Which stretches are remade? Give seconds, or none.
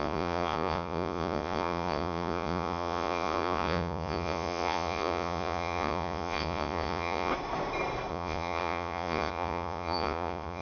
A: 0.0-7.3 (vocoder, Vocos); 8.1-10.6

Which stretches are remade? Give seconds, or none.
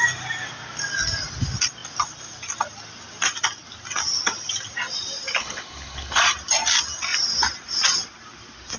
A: 5.4-6.2 (codec, HILCodec)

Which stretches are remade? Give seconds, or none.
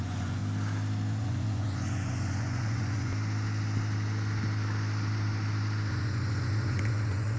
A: 0.0-0.4 (vocoder, Vocos); 1.2-3.1; 5.9-7.4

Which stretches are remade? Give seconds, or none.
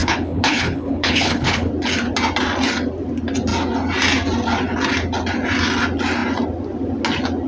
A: 0.0-1.7 (codec, HILCodec)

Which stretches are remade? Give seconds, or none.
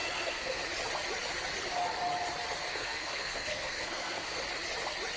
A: 0.0-0.6 (codec, SNAC); 2.7-4.4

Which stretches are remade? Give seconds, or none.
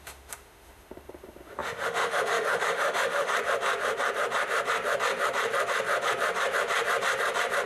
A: 0.0-3.3 (autoencoder, DAC-VAE)